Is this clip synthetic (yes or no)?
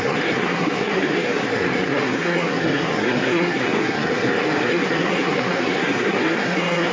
yes